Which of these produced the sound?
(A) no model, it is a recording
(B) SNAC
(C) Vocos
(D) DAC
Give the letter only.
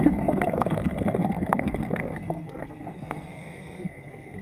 B